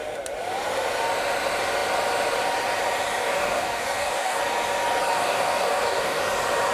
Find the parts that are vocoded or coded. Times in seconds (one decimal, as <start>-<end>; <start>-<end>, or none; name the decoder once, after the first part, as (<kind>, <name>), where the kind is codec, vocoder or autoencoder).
3.2-4.4 (codec, DAC); 5.1-6.2